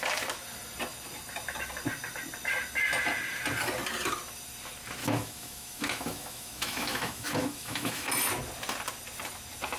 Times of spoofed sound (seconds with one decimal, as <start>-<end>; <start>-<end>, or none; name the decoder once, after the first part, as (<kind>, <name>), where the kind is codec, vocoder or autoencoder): 5.0-8.1 (autoencoder, DAC-VAE)